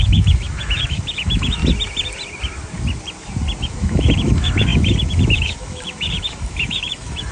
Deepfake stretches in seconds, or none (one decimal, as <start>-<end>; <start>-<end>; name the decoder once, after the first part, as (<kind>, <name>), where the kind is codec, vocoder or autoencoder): 0.0-1.6 (autoencoder, DAC-VAE); 3.6-7.3